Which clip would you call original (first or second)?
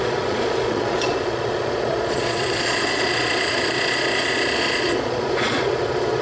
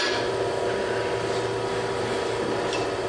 second